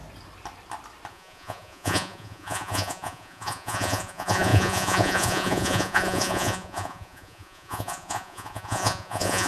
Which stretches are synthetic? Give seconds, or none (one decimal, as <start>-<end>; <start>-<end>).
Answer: 1.1-9.5